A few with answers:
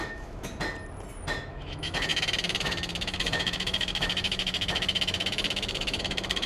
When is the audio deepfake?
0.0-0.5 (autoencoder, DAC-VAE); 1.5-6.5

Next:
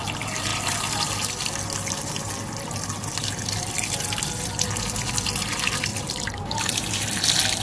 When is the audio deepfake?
5.9-7.0 (vocoder, BigVGAN v2)